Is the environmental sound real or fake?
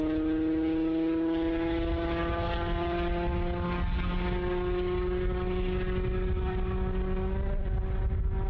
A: real